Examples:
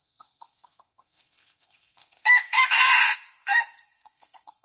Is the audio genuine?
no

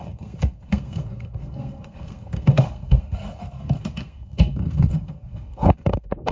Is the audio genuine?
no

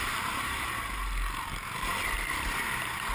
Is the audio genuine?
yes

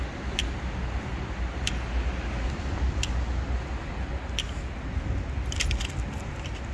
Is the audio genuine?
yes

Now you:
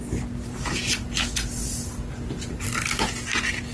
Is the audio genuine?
yes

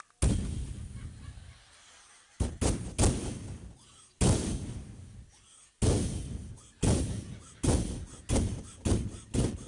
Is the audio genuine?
yes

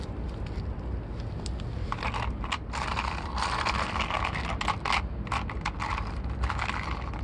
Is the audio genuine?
yes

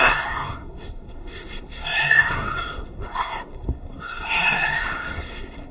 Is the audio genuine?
no